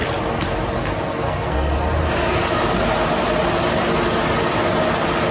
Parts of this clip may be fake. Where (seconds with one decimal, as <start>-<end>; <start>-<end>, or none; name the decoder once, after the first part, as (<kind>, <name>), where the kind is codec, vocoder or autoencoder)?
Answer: 1.1-1.7 (codec, SNAC)